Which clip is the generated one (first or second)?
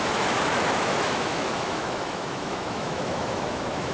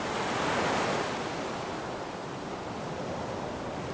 first